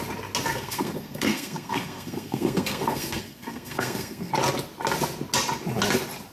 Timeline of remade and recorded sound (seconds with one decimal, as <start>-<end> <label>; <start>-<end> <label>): 0.0-0.5 recorded; 0.5-4.3 remade; 4.3-6.3 recorded